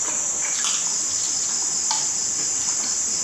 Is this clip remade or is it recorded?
recorded